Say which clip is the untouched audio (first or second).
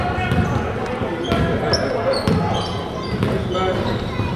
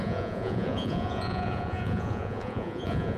first